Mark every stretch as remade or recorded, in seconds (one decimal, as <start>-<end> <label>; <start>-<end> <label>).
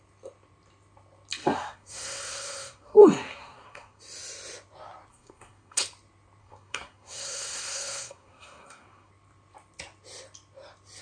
0.0-1.4 recorded; 1.4-4.0 remade; 4.0-5.1 recorded; 5.1-5.8 remade; 5.8-6.4 recorded; 6.4-9.1 remade; 9.1-11.0 recorded